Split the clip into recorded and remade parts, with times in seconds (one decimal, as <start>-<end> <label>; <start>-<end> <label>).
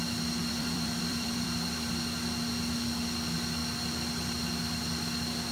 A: 0.0-0.4 recorded; 0.4-1.9 remade; 1.9-5.5 recorded